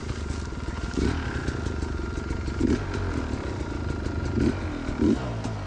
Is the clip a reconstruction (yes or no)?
no